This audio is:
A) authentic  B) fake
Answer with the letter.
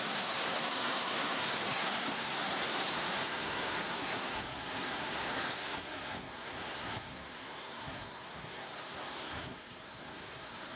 B